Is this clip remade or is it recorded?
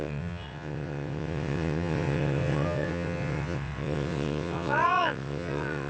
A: remade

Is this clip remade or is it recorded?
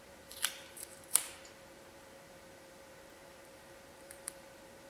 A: remade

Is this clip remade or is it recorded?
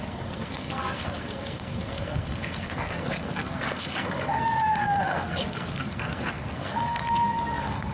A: remade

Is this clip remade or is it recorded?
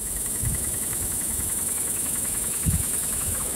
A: remade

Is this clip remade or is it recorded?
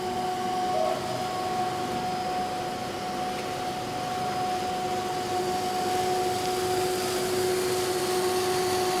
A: recorded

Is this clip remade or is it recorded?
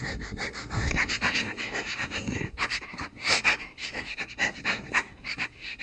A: remade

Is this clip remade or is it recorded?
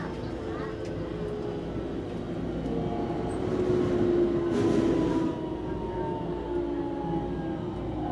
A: recorded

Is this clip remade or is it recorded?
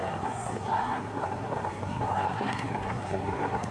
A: remade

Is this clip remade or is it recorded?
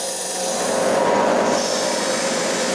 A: remade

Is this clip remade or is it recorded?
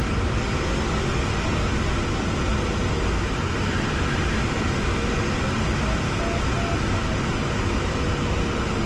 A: recorded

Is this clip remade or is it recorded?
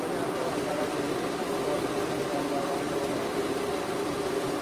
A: recorded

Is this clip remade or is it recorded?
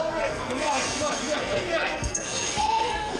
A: remade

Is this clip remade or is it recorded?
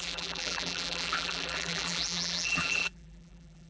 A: remade